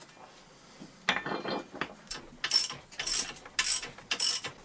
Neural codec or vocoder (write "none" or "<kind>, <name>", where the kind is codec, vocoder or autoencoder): none